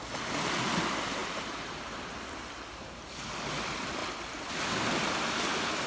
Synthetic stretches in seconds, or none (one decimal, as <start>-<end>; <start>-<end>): 1.2-3.3

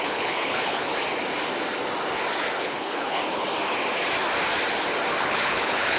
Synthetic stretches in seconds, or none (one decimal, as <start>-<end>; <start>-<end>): 0.0-0.9; 2.6-3.4; 5.2-6.0

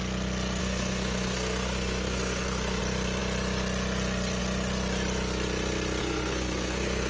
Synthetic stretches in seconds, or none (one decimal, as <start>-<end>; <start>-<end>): 0.6-2.8; 6.0-7.1

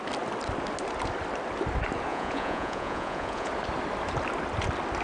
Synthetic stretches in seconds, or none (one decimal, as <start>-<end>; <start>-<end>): 2.1-3.5

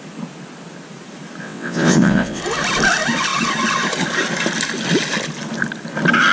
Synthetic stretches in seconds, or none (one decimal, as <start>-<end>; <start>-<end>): 1.4-2.4